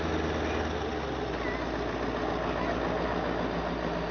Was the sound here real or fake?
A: real